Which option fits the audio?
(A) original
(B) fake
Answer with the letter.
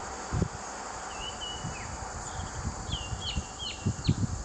A